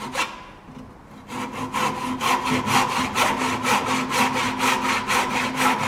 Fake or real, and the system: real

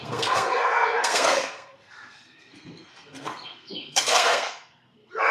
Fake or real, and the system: fake, codec, SNAC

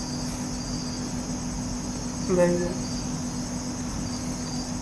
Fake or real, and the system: real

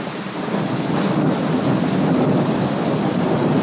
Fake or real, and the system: real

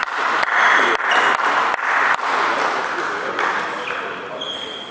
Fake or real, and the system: real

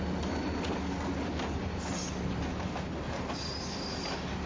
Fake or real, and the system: real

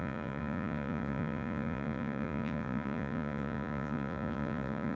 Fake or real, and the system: fake, vocoder, Vocos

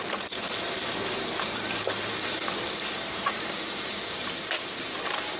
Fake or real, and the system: fake, vocoder, BigVGAN v2